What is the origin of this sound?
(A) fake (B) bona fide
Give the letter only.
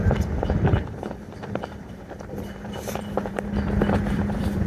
A